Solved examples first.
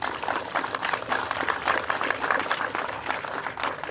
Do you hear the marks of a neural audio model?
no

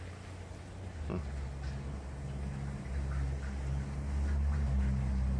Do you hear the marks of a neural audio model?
no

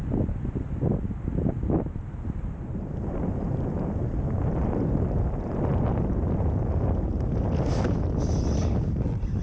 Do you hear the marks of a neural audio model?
no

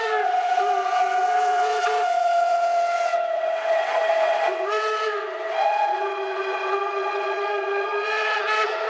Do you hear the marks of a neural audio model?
yes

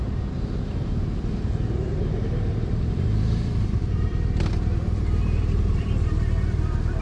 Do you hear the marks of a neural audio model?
yes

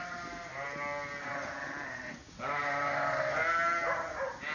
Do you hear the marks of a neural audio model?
no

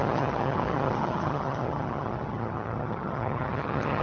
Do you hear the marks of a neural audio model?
yes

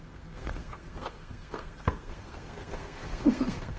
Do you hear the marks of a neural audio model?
yes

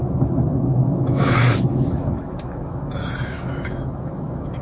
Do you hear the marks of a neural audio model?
yes